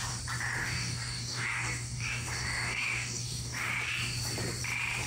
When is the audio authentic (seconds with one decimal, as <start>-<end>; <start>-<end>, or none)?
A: 0.0-0.6; 3.7-5.1